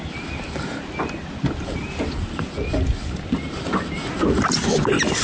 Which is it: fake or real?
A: real